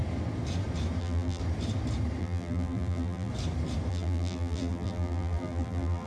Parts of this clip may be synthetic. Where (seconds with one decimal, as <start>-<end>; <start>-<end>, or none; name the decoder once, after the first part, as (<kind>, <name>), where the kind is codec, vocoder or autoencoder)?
1.0-1.4 (vocoder, BigVGAN v2); 2.2-3.3; 3.9-6.1